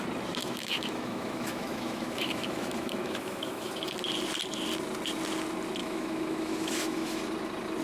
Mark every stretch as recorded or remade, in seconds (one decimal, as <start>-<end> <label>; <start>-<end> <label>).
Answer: 0.0-0.4 recorded; 0.4-3.7 remade; 3.7-5.8 recorded; 5.8-7.2 remade; 7.2-7.8 recorded